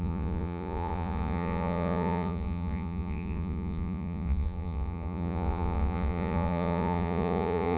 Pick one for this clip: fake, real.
fake